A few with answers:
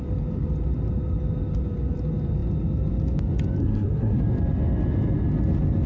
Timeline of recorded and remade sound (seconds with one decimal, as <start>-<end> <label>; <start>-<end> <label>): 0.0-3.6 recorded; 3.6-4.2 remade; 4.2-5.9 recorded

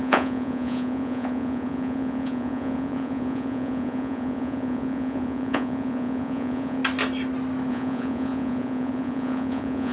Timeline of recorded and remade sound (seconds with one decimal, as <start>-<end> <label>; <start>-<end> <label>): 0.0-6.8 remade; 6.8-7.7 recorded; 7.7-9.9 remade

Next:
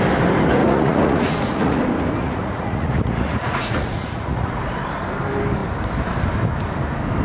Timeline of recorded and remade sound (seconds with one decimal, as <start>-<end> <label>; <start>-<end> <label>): 0.0-0.6 recorded; 0.6-1.8 remade; 1.8-2.2 recorded; 2.2-4.6 remade; 4.6-7.2 recorded

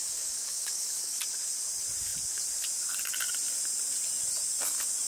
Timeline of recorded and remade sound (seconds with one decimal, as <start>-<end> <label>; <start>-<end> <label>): 0.0-1.2 remade; 1.2-5.1 recorded

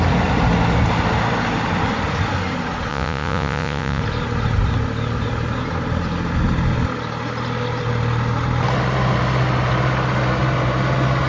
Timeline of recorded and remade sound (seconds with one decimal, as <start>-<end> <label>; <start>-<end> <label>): 0.0-2.9 recorded; 2.9-4.0 remade; 4.0-11.3 recorded